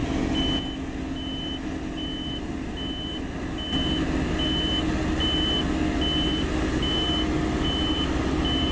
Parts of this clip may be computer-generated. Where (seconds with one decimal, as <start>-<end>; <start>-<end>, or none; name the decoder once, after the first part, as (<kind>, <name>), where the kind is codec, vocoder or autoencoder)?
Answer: none